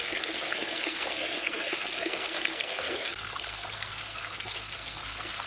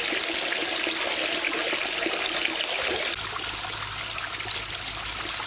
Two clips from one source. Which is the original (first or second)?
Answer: second